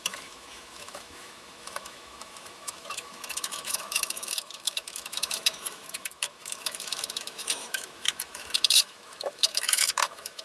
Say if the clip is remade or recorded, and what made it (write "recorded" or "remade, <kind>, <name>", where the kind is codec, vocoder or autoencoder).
remade, autoencoder, DAC-VAE